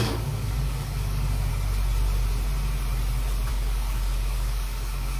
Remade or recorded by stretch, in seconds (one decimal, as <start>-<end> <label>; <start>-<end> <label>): 0.0-1.5 remade; 1.5-3.5 recorded; 3.5-5.2 remade